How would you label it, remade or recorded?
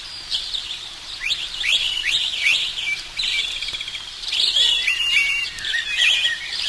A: remade